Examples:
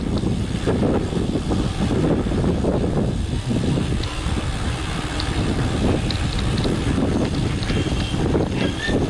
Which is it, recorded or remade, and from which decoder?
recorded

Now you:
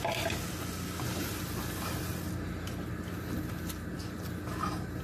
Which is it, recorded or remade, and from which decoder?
recorded